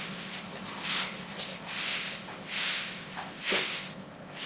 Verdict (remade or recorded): remade